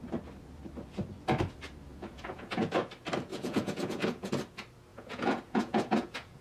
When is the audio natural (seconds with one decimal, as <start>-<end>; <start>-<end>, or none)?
0.0-1.9; 2.8-3.3; 4.3-4.9